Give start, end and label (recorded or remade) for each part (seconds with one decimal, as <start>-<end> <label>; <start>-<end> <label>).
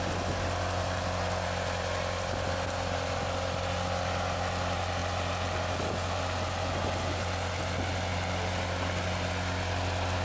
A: 0.0-10.2 recorded